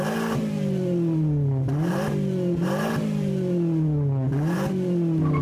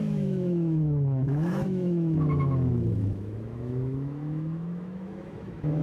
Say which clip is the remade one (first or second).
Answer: second